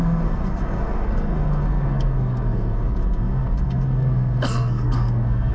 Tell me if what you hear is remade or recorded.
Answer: remade